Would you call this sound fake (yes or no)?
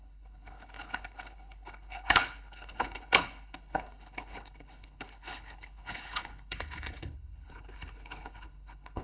yes